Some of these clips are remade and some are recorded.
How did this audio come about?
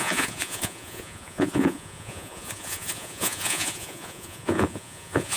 remade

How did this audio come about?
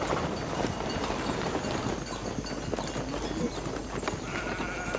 recorded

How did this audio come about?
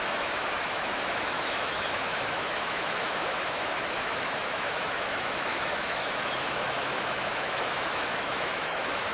remade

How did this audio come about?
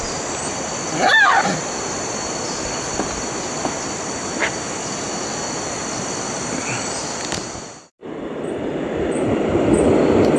recorded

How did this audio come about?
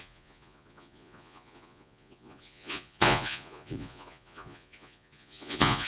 remade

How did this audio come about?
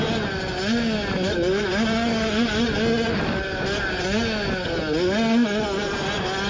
recorded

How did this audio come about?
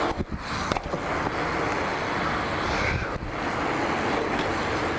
recorded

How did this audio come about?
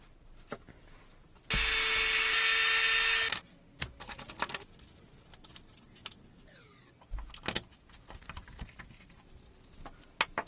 recorded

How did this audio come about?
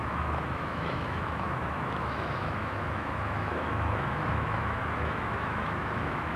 remade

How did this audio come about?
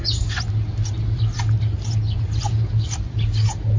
recorded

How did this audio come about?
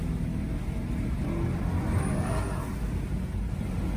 recorded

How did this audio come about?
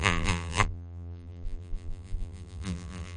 remade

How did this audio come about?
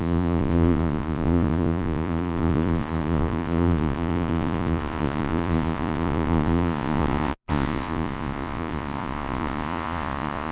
remade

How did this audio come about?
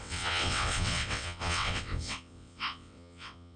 remade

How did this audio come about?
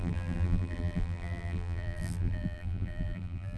remade